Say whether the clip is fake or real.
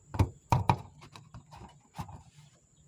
fake